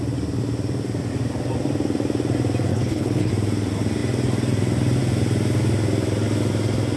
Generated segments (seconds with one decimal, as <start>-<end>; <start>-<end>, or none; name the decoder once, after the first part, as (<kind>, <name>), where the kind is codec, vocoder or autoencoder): 2.7-3.3 (codec, HILCodec)